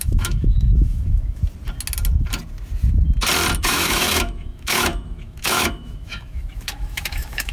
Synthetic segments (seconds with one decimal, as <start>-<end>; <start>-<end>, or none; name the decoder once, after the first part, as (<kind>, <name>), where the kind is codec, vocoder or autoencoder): 0.0-1.4 (autoencoder, DAC-VAE); 3.6-7.5